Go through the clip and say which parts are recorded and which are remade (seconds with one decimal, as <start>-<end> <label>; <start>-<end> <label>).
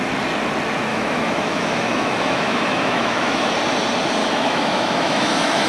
0.0-0.9 recorded; 0.9-3.5 remade; 3.5-4.2 recorded; 4.2-5.7 remade